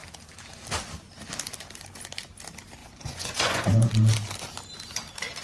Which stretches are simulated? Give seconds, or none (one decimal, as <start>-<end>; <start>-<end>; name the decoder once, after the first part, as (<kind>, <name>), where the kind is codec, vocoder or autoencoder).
2.8-3.9 (vocoder, Vocos)